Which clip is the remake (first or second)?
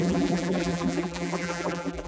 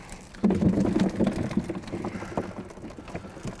first